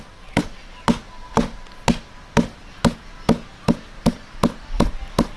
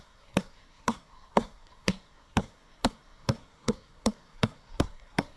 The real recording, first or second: first